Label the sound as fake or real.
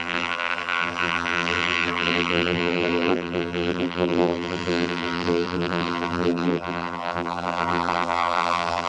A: fake